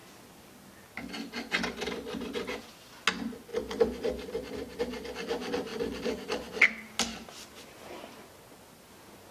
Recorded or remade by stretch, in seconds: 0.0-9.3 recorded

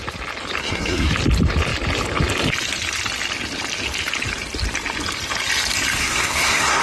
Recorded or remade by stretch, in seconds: 0.0-0.6 recorded; 0.6-1.1 remade; 1.1-6.0 recorded; 6.0-6.8 remade

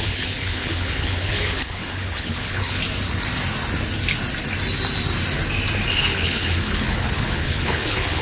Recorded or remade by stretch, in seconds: 0.0-2.8 remade; 2.8-5.9 recorded; 5.9-8.2 remade

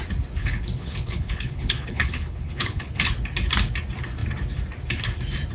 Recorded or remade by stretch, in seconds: 0.0-0.4 recorded; 0.4-3.1 remade; 3.1-5.5 recorded

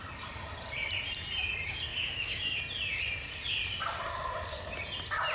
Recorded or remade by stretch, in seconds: 0.0-1.9 recorded; 1.9-2.6 remade; 2.6-5.3 recorded

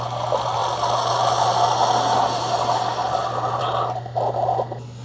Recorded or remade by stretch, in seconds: 0.0-5.0 recorded

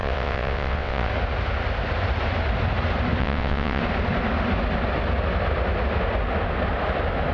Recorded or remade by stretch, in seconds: 0.0-1.1 remade; 1.1-3.2 recorded; 3.2-3.8 remade; 3.8-7.3 recorded